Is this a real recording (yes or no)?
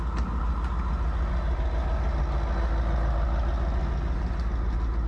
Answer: yes